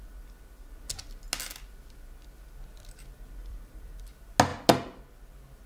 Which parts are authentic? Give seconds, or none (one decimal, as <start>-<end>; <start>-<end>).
0.0-3.4; 4.0-5.7